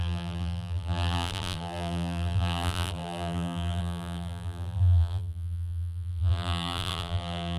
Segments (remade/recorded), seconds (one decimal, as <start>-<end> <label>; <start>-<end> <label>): 0.0-7.6 remade